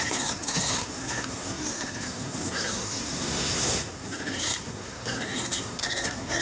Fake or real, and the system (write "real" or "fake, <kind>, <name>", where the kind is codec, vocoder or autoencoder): fake, codec, SNAC